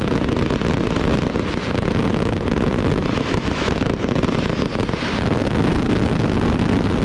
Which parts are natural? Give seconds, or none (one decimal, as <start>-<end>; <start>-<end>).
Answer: 0.0-3.0; 3.7-7.0